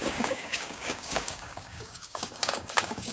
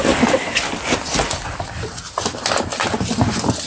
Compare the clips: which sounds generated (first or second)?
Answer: first